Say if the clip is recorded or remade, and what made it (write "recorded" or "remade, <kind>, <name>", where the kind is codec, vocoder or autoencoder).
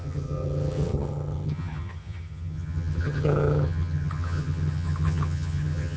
remade, vocoder, HiFi-GAN